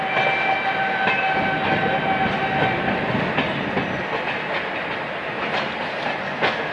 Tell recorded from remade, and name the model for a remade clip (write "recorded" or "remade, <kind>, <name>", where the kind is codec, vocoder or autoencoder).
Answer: recorded